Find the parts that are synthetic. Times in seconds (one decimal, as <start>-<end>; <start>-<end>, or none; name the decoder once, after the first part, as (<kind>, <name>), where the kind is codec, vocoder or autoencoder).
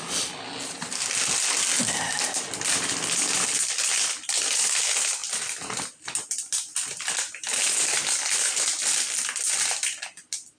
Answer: none